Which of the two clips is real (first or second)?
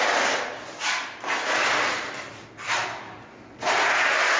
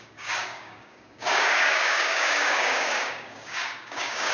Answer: first